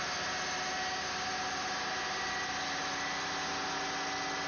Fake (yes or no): no